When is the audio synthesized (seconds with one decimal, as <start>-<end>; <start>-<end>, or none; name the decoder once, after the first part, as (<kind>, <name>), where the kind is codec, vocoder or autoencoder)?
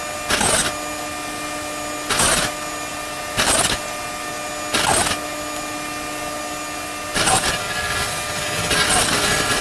none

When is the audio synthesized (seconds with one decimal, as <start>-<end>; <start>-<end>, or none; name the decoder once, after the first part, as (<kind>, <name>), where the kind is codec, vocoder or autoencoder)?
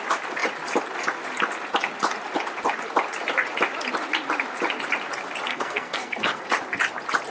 5.5-6.4 (codec, SNAC)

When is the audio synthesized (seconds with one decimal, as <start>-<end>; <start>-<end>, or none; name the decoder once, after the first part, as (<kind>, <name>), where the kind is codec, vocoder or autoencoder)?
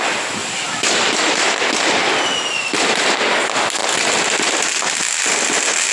0.4-1.6 (vocoder, BigVGAN v2)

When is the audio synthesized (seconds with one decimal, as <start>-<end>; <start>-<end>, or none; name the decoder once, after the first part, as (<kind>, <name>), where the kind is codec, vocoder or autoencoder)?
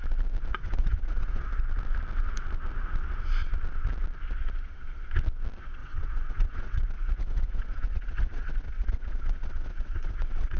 0.5-1.5 (vocoder, WaveNeXt); 5.8-10.6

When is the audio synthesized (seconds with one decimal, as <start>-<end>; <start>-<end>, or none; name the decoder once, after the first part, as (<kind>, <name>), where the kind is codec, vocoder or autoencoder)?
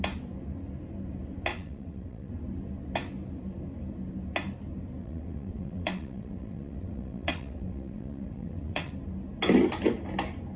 1.5-2.3 (vocoder, WaveNeXt); 5.0-8.9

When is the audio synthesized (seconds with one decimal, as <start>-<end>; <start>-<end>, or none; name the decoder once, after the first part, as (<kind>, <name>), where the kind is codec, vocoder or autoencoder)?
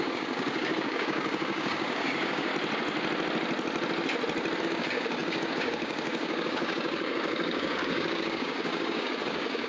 0.0-2.5 (codec, DAC); 4.6-9.7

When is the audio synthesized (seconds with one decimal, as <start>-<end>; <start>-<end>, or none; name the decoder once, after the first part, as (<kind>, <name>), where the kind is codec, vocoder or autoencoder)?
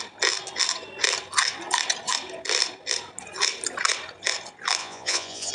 4.8-5.5 (vocoder, Vocos)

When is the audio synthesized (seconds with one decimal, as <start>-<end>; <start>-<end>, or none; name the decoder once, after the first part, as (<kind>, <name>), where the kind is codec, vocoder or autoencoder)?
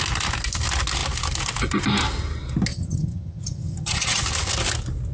2.7-4.2 (vocoder, HiFi-GAN)